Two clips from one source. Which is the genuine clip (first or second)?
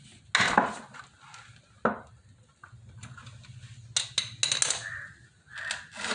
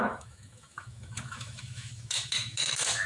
first